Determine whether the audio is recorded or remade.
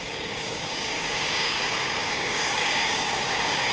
remade